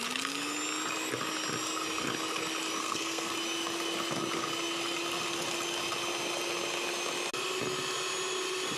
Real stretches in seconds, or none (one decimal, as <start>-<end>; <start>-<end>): 0.0-2.8; 3.3-8.8